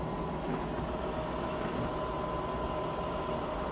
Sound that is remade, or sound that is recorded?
recorded